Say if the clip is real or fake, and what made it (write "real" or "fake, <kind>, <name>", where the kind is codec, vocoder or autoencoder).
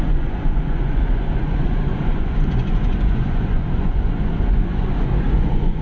fake, vocoder, Vocos